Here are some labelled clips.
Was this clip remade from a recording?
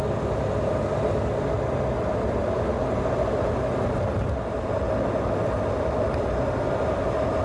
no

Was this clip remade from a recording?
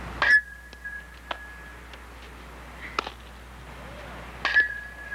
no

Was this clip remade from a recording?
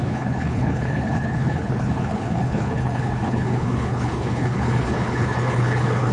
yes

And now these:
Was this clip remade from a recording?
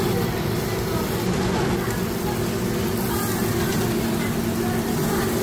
no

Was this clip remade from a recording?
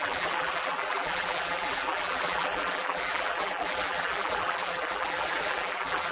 yes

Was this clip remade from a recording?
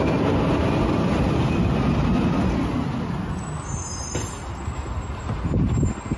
no